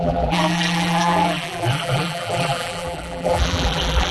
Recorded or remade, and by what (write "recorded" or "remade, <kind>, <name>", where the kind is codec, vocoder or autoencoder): remade, vocoder, BigVGAN v2